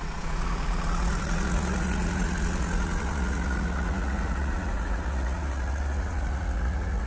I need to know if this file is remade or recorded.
remade